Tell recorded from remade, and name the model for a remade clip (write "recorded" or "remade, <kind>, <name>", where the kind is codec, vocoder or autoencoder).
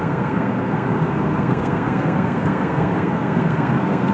remade, codec, SNAC